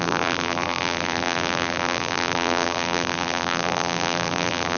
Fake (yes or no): yes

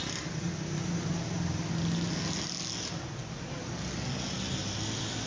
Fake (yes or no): no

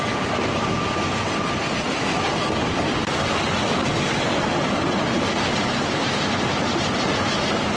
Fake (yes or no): no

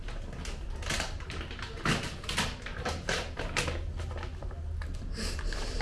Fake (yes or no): no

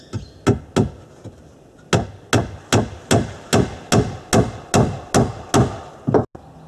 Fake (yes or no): no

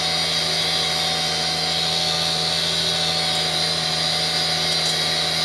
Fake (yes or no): no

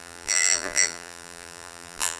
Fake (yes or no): yes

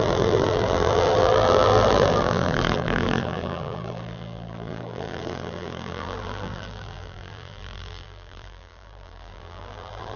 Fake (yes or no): yes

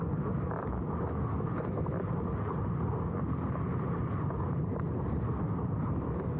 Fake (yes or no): no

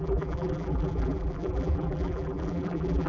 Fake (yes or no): yes